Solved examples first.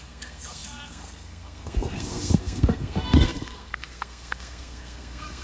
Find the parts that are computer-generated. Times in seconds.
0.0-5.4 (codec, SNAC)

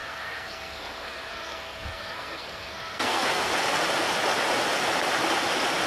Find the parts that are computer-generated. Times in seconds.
0.0-3.5 (codec, SNAC)

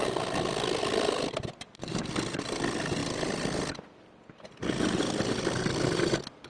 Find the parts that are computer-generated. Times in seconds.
none

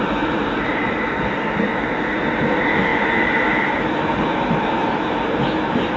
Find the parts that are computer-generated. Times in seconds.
none

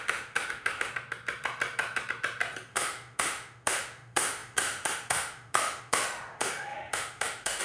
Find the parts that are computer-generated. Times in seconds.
0.0-0.9 (autoencoder, DAC-VAE); 2.7-7.6

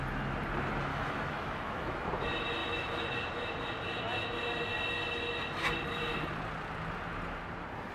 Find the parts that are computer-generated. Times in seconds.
0.9-2.1 (autoencoder, DAC-VAE); 2.6-3.1

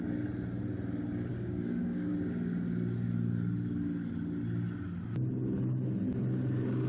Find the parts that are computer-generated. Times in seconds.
1.3-2.1 (codec, DAC)